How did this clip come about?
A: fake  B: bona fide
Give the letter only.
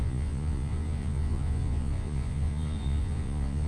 A